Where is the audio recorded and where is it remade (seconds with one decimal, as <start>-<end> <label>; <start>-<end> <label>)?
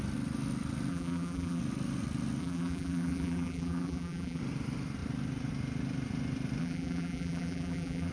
0.0-0.9 recorded; 0.9-1.6 remade; 1.6-2.4 recorded; 2.4-4.4 remade; 4.4-6.6 recorded; 6.6-8.1 remade